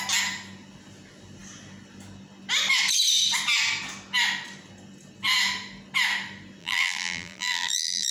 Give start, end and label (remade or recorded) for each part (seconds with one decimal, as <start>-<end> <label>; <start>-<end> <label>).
0.0-6.6 recorded; 6.6-8.1 remade